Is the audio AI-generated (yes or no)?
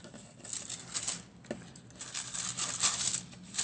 no